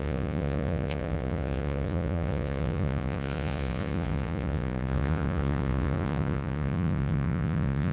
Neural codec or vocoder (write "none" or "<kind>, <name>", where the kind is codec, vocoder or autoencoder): vocoder, Vocos